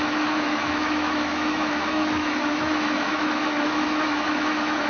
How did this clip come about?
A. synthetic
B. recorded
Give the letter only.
A